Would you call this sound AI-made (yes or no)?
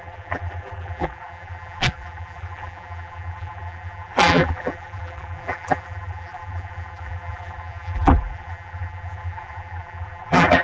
yes